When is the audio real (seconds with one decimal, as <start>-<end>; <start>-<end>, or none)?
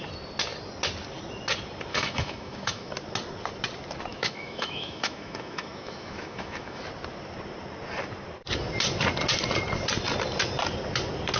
0.0-1.9; 2.9-4.1; 6.8-11.4